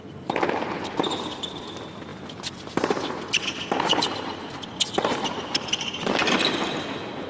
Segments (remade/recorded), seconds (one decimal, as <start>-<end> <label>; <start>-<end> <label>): 0.0-7.3 recorded